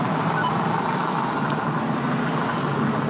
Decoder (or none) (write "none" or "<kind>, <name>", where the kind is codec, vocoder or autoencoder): none